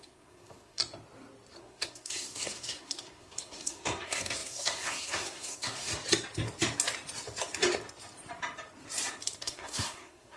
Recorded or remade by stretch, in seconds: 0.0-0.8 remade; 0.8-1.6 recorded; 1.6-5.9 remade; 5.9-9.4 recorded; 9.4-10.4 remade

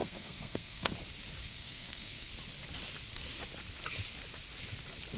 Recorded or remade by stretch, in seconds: 0.0-0.9 remade; 0.9-1.4 recorded; 1.4-2.3 remade; 2.3-5.2 recorded

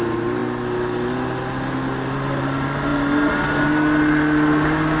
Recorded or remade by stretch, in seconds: 0.0-5.0 recorded

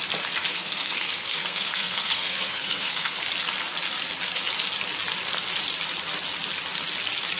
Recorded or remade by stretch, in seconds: 0.0-0.5 recorded; 0.5-3.2 remade; 3.2-7.4 recorded